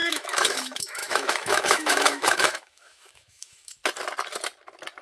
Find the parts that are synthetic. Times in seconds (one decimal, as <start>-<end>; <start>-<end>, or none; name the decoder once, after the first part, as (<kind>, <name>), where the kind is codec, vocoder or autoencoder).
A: 0.0-3.8 (autoencoder, DAC-VAE)